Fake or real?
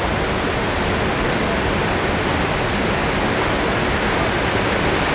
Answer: real